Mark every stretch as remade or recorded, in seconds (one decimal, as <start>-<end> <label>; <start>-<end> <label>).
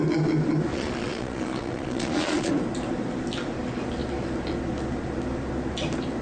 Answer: 0.0-0.7 recorded; 0.7-2.5 remade; 2.5-6.2 recorded